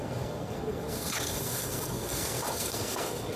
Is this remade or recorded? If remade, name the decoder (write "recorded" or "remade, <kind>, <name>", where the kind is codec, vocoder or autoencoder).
remade, codec, SNAC